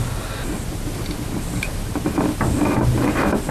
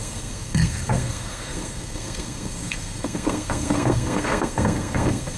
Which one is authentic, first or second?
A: first